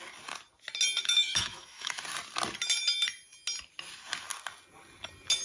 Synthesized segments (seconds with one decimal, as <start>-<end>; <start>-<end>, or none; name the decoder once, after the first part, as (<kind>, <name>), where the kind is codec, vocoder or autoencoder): 1.0-2.0 (autoencoder, DAC-VAE)